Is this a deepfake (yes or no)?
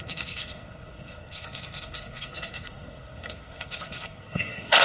yes